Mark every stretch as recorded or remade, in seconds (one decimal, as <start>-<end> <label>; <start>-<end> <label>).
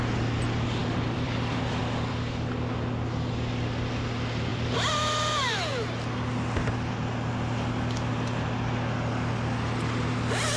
0.0-0.8 recorded; 0.8-1.8 remade; 1.8-4.5 recorded; 4.5-5.3 remade; 5.3-10.6 recorded